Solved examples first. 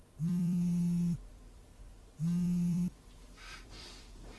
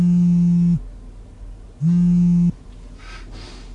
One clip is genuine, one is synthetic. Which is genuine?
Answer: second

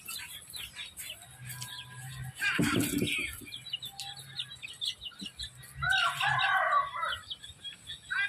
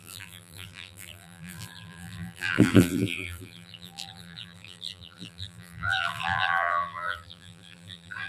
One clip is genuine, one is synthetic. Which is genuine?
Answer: first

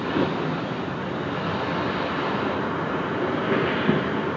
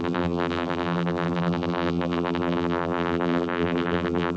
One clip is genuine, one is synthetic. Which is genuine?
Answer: first